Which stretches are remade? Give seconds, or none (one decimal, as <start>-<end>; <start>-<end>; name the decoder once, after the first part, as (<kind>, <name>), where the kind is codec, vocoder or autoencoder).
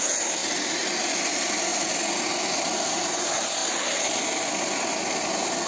0.4-1.1 (vocoder, BigVGAN v2); 3.6-4.2